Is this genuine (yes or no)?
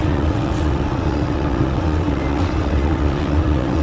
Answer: no